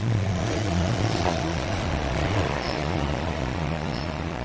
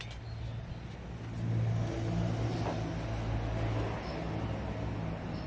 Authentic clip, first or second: second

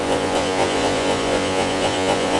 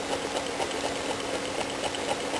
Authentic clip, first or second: second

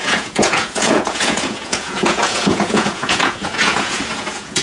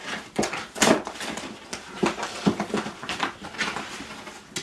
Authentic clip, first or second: second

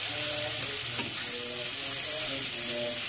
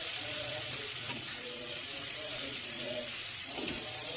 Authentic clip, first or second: first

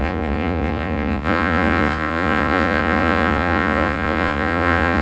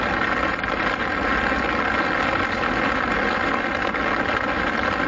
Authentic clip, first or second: second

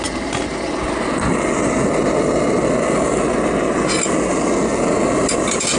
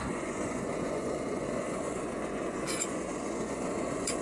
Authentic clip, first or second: first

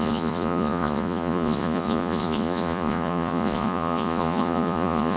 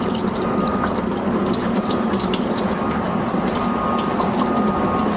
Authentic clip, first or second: second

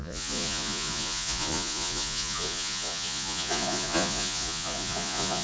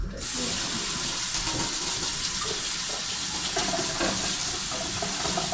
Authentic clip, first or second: second